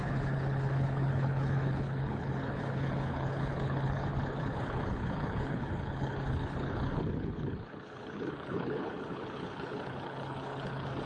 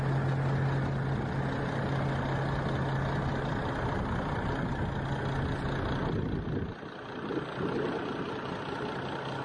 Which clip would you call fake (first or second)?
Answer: first